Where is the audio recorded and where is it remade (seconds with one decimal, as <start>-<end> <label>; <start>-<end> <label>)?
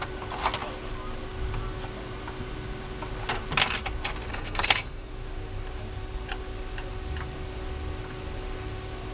0.0-4.3 recorded; 4.3-5.1 remade; 5.1-9.1 recorded